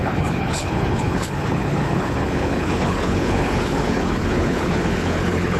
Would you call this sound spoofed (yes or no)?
yes